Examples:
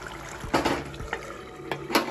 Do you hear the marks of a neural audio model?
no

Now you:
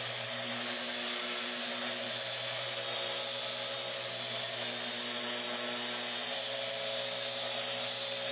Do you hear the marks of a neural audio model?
no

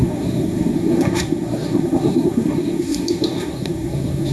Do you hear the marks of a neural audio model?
yes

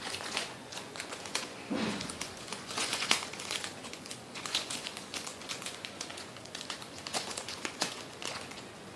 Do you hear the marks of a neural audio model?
yes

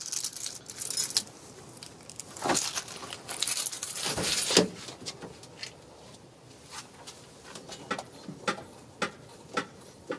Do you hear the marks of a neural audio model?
no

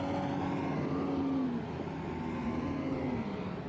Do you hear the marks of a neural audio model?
no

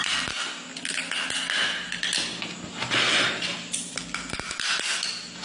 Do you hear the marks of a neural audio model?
no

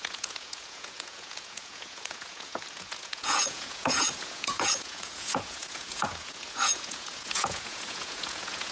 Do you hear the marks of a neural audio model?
yes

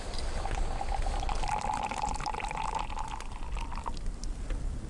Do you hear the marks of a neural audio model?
no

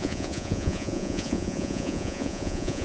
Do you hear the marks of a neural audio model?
yes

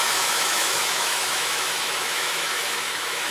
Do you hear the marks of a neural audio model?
yes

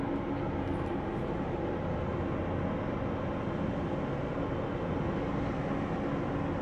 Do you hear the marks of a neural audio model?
no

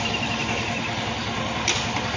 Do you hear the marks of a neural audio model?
no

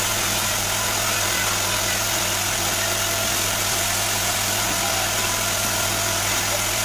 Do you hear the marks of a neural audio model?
yes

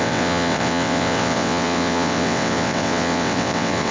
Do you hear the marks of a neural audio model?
yes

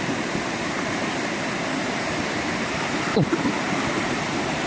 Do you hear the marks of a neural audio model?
yes